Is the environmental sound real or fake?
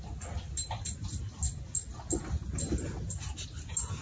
real